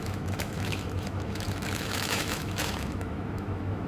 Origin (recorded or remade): remade